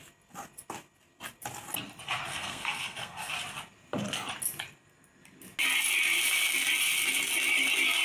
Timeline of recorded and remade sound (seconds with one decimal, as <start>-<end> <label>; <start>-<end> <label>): 0.0-2.3 recorded; 2.3-3.3 remade; 3.3-8.0 recorded